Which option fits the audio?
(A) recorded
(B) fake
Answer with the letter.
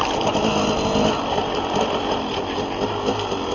A